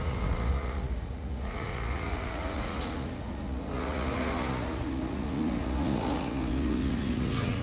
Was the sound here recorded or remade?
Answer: remade